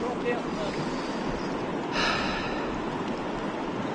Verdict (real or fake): real